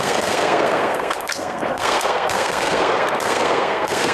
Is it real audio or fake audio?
fake